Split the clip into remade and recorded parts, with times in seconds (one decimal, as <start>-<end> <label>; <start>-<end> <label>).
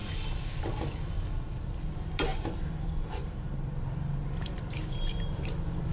0.0-2.3 recorded; 2.3-5.9 remade